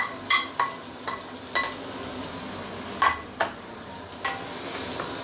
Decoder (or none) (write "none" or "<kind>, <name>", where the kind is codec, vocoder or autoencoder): none